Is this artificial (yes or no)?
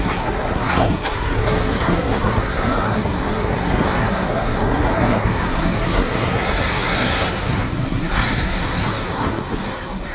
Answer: yes